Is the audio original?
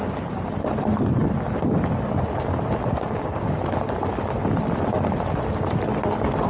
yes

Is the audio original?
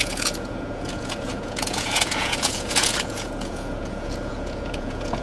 no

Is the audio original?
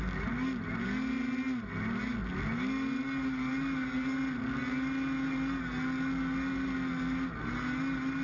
yes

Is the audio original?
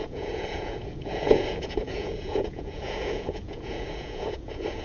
no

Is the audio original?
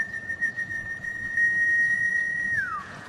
no